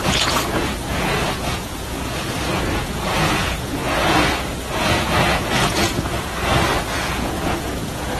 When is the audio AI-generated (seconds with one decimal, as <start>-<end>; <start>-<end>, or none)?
0.0-8.2

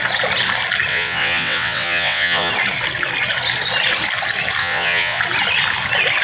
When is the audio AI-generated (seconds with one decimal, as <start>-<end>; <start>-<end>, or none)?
0.9-2.5; 4.6-5.2

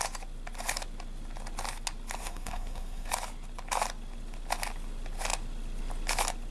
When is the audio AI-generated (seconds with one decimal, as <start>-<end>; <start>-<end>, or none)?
2.2-3.1